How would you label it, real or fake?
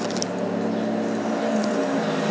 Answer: real